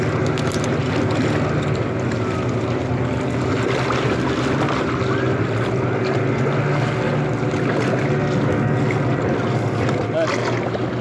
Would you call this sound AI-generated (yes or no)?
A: no